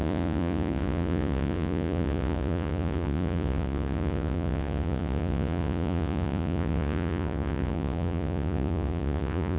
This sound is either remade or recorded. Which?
remade